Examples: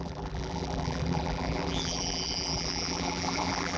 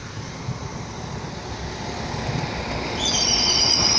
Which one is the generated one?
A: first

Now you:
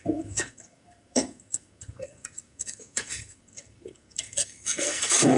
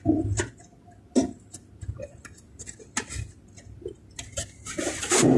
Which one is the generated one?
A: first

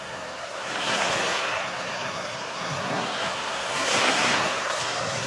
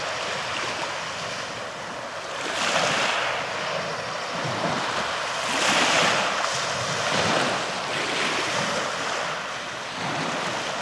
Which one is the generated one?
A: first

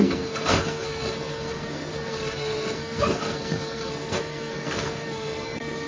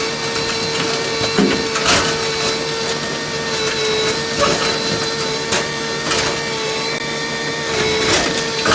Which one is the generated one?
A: first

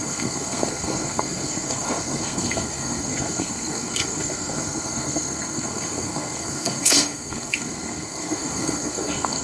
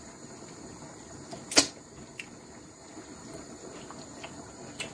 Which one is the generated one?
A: first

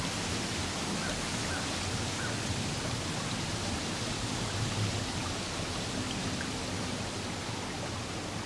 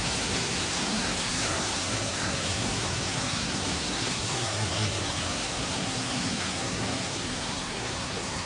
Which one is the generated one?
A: second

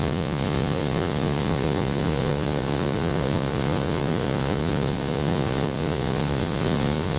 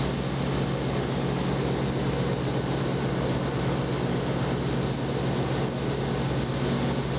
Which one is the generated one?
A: first